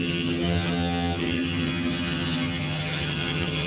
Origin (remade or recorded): remade